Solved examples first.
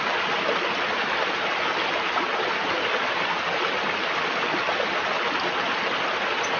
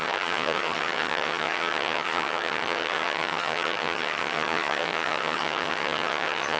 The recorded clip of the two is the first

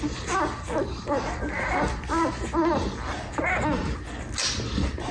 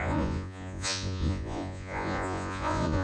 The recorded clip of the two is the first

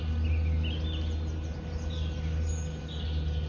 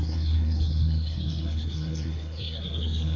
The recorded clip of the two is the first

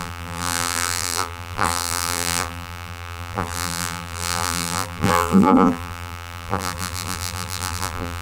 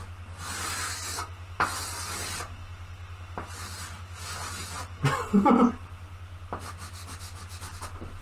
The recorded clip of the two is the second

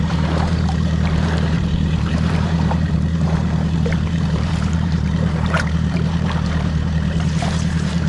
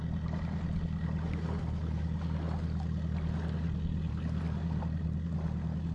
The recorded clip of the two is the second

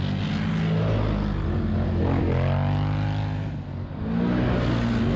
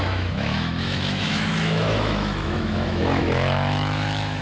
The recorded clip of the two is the first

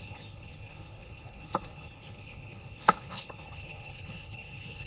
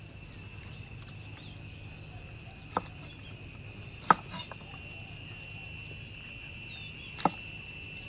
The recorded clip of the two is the second